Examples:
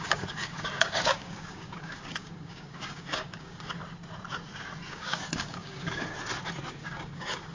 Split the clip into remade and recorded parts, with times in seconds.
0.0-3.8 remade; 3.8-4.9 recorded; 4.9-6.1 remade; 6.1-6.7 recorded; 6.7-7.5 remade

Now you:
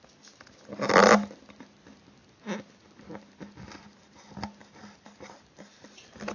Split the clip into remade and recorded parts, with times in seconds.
0.0-6.3 recorded

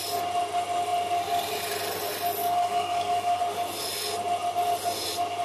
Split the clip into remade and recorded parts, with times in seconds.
0.0-2.4 recorded; 2.4-3.4 remade; 3.4-5.4 recorded

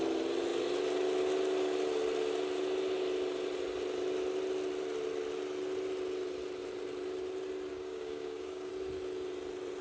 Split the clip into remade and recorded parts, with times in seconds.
0.0-7.7 recorded; 7.7-8.7 remade; 8.7-9.8 recorded

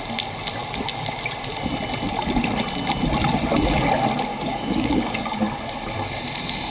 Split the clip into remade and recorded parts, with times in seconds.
0.0-4.3 recorded; 4.3-5.6 remade; 5.6-6.7 recorded

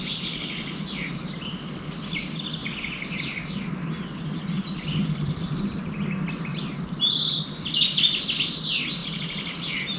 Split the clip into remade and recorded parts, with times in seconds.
0.0-10.0 recorded

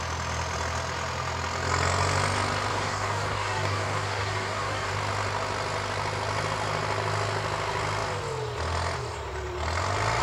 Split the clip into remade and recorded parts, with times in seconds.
0.0-2.7 recorded; 2.7-4.9 remade; 4.9-10.2 recorded

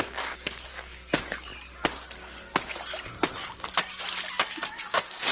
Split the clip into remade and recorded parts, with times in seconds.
0.0-1.5 remade; 1.5-4.7 recorded; 4.7-5.3 remade